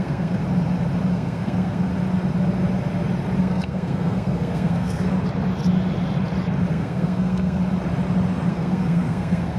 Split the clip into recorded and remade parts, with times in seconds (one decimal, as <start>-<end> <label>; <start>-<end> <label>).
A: 0.0-0.4 remade; 0.4-1.1 recorded; 1.1-1.9 remade; 1.9-3.4 recorded; 3.4-5.1 remade; 5.1-6.7 recorded; 6.7-7.6 remade; 7.6-8.5 recorded; 8.5-9.6 remade

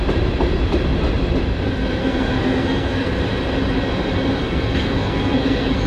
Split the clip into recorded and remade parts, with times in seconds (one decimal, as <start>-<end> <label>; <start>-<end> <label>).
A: 0.0-2.0 recorded; 2.0-3.2 remade; 3.2-4.4 recorded; 4.4-5.9 remade

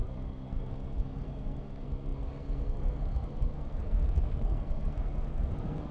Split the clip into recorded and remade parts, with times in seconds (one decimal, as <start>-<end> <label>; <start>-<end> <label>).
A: 0.0-5.9 remade

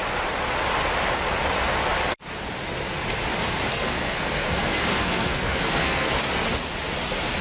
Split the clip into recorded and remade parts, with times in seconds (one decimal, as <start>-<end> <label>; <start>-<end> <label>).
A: 0.0-3.7 recorded; 3.7-6.1 remade; 6.1-7.4 recorded

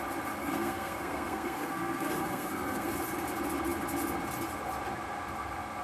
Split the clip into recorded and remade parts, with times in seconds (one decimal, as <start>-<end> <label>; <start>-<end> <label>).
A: 0.0-0.4 recorded; 0.4-2.9 remade; 2.9-5.8 recorded